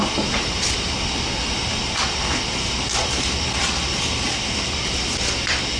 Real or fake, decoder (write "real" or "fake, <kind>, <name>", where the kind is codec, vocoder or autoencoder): real